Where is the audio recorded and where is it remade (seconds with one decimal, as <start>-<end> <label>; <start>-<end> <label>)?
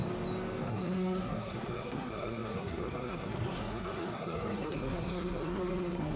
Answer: 0.0-0.7 recorded; 0.7-6.2 remade